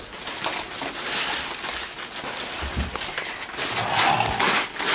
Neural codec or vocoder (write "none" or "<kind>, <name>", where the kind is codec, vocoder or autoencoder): none